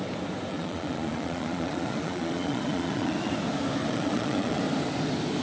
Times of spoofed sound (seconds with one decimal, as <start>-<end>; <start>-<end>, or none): 0.5-3.3; 3.8-4.6